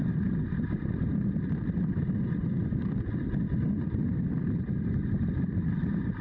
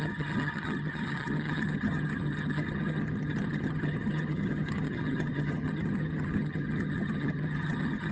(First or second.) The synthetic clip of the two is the second